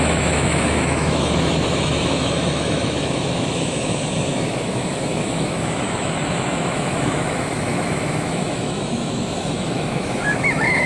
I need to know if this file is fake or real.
fake